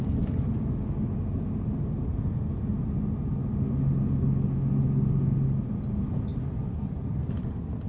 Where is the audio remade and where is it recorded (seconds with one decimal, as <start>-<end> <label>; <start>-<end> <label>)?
0.0-2.0 recorded; 2.0-2.5 remade; 2.5-7.9 recorded